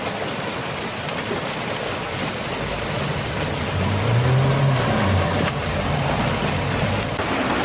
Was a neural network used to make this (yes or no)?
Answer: no